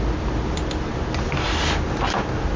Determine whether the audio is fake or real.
real